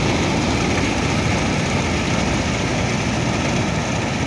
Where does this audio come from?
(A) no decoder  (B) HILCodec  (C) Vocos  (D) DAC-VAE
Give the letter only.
A